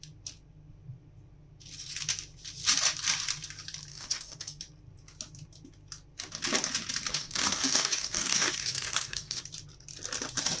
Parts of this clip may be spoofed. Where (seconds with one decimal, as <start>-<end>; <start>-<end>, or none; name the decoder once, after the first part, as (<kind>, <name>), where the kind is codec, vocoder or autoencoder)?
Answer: 3.9-4.6 (codec, DAC); 7.1-9.4

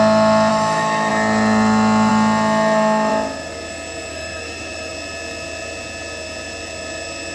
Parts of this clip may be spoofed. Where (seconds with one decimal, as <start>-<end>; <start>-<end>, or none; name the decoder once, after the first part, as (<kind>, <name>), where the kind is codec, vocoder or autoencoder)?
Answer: 0.5-1.1 (autoencoder, DAC-VAE); 4.1-4.9

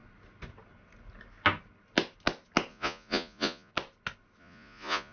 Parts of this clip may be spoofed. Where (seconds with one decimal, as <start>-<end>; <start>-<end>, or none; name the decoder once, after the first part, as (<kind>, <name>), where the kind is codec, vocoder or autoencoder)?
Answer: 2.7-3.7 (vocoder, Vocos); 4.4-5.1

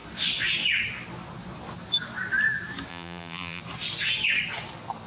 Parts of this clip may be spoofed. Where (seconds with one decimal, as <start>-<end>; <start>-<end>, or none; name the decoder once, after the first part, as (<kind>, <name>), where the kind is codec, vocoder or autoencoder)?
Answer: 2.9-3.6 (vocoder, BigVGAN v2)

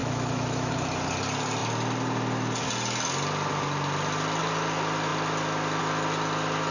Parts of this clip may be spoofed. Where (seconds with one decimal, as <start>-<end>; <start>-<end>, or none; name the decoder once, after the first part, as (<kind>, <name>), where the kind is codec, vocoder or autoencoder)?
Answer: 0.0-0.7 (autoencoder, DAC-VAE)